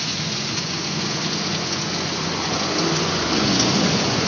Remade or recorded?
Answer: remade